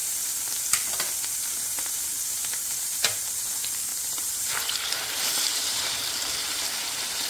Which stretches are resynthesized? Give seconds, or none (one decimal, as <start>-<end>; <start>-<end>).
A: 1.4-7.3